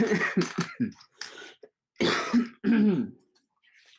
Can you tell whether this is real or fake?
real